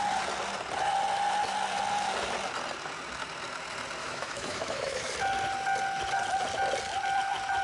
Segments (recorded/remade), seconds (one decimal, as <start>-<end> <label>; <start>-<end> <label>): 0.0-4.0 recorded; 4.0-5.1 remade; 5.1-7.6 recorded